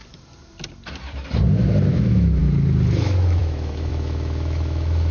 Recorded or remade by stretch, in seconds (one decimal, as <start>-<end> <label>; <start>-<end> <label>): 0.0-1.9 recorded; 1.9-2.4 remade; 2.4-3.0 recorded; 3.0-5.1 remade